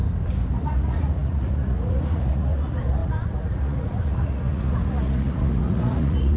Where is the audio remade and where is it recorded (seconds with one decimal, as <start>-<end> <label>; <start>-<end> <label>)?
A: 0.0-0.5 recorded; 0.5-6.4 remade